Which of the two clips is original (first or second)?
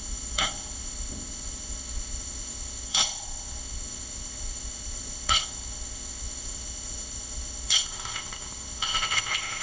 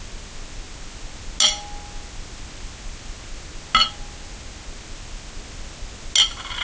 second